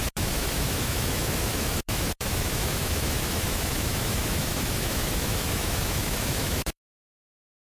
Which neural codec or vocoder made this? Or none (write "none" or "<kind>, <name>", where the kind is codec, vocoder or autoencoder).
autoencoder, DAC-VAE